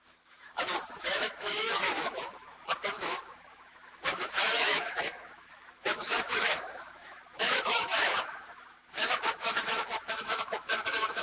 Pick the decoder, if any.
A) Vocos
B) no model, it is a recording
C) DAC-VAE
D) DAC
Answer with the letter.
C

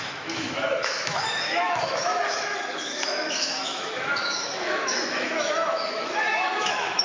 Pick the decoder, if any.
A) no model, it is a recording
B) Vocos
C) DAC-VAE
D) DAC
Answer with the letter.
C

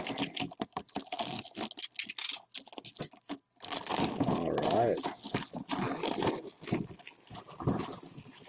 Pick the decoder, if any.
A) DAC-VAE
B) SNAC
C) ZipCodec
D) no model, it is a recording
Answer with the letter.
D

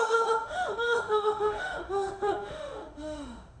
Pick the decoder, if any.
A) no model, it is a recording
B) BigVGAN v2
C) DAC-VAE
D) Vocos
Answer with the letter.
C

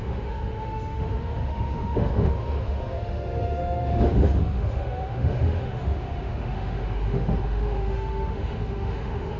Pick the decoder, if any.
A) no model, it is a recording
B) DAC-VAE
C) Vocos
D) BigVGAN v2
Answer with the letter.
B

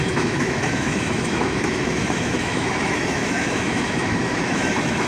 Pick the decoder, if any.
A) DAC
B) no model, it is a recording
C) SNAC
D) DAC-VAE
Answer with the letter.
D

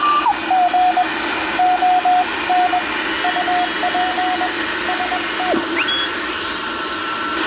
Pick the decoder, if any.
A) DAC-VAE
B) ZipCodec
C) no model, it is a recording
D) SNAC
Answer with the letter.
C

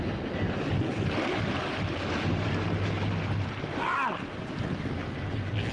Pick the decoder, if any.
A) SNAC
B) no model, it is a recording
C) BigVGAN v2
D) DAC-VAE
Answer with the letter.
B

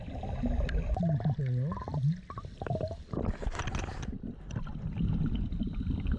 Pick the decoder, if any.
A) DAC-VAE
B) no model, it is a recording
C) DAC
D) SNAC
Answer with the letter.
B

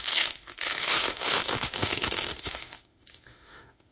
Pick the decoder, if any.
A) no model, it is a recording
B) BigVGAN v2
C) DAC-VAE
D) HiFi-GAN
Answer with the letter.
C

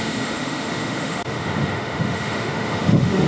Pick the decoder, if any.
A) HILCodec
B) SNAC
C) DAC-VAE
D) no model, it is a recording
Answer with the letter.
C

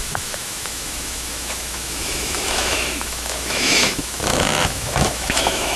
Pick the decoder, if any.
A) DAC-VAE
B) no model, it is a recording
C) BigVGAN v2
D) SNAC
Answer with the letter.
A